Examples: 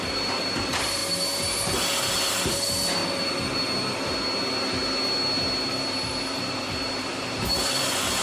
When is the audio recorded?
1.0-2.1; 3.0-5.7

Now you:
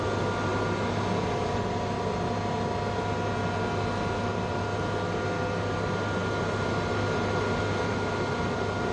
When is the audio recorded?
0.0-8.9

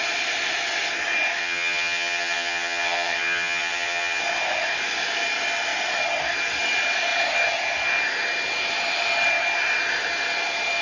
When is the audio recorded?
0.0-1.4; 4.2-10.8

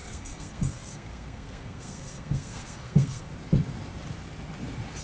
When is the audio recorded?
3.3-5.0

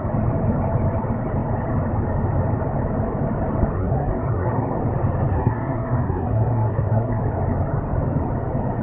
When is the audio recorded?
0.0-3.8; 4.8-5.3; 7.2-8.8

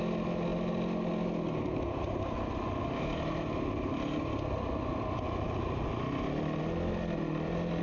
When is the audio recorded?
0.0-7.8

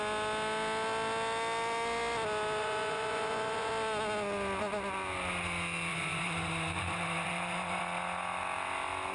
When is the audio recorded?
0.0-2.6; 3.7-5.9; 7.8-9.1